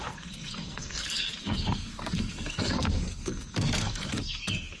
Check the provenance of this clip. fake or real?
fake